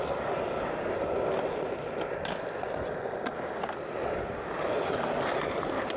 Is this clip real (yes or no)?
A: yes